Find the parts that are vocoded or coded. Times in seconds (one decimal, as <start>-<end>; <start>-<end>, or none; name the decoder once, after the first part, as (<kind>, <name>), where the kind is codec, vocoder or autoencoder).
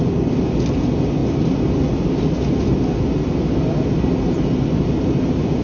none